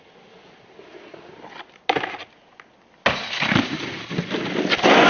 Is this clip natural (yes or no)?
yes